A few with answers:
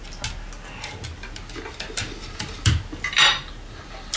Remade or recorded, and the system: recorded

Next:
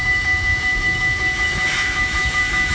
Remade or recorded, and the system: remade, autoencoder, DAC-VAE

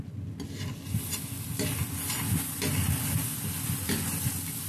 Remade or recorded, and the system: recorded